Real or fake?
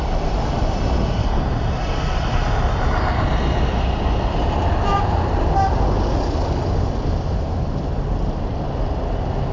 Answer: real